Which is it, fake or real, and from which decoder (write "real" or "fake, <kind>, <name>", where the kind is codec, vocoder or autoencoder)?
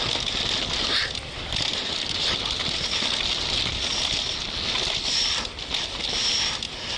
real